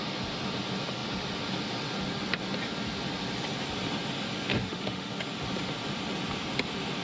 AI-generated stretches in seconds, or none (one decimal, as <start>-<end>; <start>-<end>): 4.5-5.1